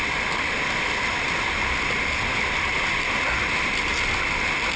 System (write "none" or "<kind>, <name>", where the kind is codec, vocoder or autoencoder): none